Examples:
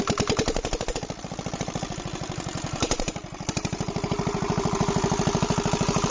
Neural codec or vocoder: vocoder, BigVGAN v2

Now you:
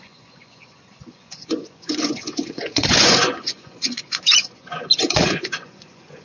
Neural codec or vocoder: vocoder, Vocos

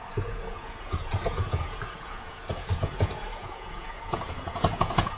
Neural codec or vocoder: vocoder, Vocos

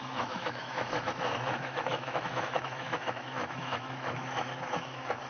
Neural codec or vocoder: autoencoder, DAC-VAE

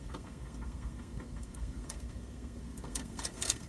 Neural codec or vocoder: codec, SNAC